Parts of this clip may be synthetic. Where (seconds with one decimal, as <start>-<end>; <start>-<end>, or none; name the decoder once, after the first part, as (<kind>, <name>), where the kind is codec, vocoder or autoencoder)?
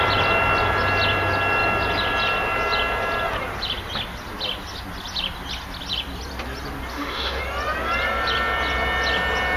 6.9-7.4 (autoencoder, DAC-VAE)